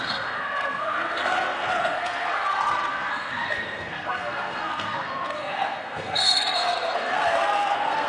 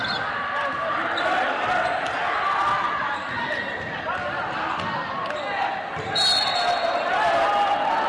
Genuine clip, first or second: second